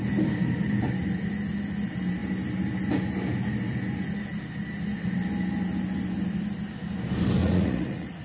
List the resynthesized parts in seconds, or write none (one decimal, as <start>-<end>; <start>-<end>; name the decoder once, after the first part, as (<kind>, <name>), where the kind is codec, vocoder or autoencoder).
7.4-8.2 (vocoder, Vocos)